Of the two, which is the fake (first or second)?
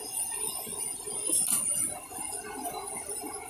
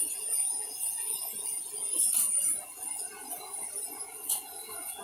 second